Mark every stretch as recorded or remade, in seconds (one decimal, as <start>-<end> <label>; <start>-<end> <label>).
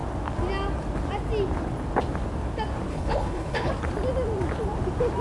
0.0-2.9 recorded; 2.9-3.7 remade; 3.7-5.2 recorded